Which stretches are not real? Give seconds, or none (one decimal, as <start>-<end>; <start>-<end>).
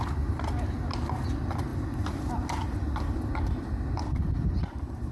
none